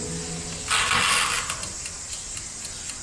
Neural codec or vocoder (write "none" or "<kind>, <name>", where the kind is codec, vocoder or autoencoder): none